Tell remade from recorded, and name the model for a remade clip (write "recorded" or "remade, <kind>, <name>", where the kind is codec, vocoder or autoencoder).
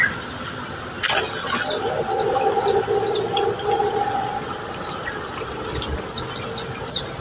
recorded